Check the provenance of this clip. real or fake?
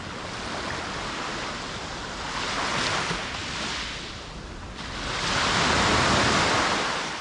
real